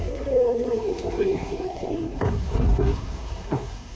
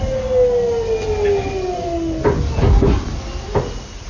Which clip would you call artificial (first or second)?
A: first